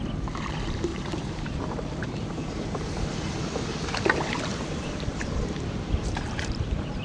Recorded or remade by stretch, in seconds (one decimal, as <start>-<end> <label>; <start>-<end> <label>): 0.0-0.9 recorded; 0.9-3.3 remade; 3.3-4.5 recorded; 4.5-7.0 remade